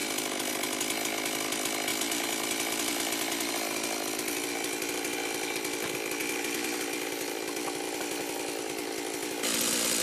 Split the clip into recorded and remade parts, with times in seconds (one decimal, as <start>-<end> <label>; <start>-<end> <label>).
0.0-10.0 recorded